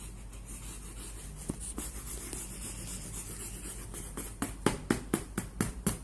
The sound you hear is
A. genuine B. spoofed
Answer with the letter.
A